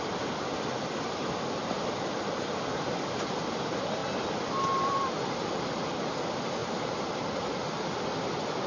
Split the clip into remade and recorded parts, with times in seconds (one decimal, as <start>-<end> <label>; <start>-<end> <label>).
0.0-6.6 recorded; 6.6-7.1 remade; 7.1-8.7 recorded